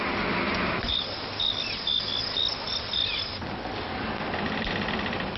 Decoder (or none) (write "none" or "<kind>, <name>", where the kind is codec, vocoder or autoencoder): none